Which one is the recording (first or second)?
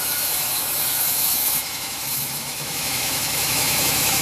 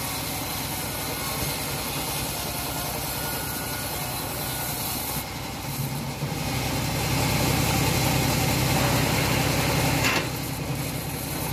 second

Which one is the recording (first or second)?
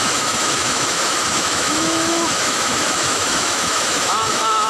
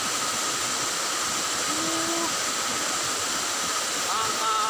second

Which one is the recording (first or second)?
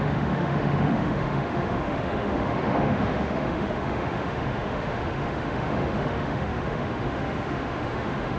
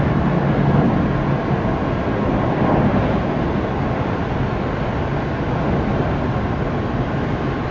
second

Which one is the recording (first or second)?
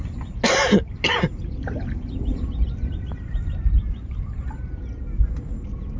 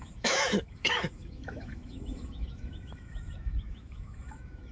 first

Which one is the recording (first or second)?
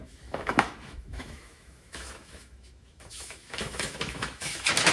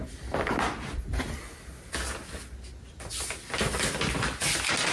second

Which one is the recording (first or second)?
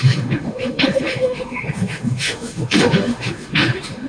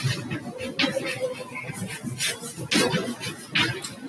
second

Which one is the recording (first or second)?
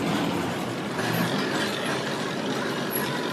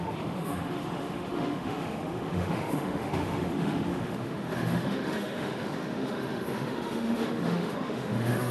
first